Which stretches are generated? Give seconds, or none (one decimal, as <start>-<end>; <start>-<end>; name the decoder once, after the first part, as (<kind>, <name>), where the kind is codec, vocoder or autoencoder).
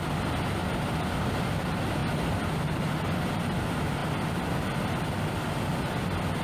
0.6-1.2 (vocoder, BigVGAN v2)